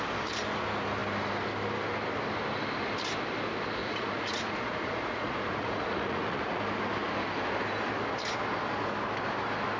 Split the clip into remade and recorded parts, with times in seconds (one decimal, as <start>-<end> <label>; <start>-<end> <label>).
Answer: 0.0-3.8 recorded; 3.8-6.6 remade; 6.6-9.8 recorded